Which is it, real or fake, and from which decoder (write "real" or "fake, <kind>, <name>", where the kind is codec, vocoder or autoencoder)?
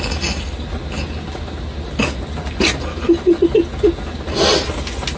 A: real